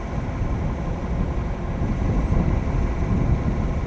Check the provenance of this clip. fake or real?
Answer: real